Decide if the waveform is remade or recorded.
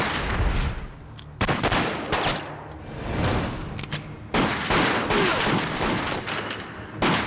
recorded